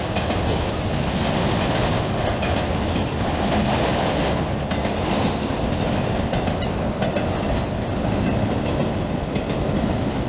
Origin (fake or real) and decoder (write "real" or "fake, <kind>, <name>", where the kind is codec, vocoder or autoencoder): real